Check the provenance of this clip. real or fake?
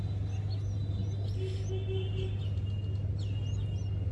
real